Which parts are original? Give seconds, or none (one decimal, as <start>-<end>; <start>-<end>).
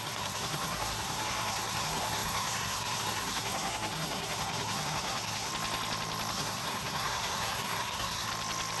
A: 5.5-6.3; 8.3-8.8